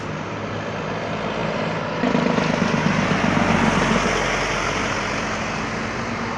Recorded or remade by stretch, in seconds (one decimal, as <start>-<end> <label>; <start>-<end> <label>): 0.0-6.4 recorded